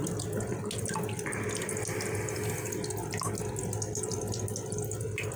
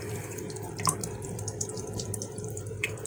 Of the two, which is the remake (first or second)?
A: second